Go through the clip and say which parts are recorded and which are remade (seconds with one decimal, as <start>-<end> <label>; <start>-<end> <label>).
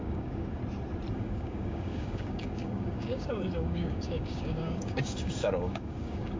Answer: 0.0-0.6 remade; 0.6-1.1 recorded; 1.1-6.4 remade